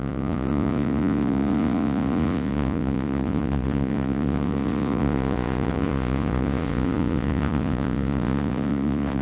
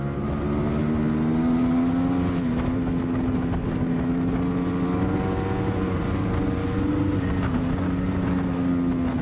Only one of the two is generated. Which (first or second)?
first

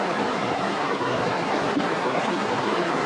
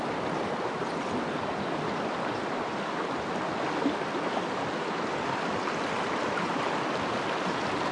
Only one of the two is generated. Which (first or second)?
first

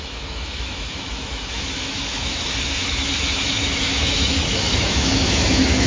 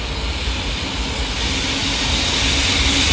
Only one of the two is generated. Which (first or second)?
first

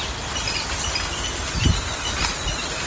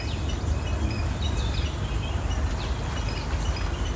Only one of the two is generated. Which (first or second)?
first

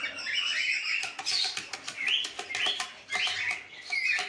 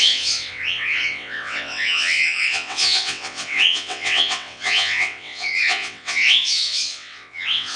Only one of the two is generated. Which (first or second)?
second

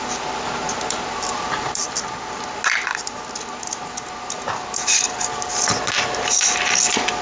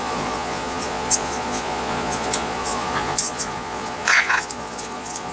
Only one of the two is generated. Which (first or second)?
second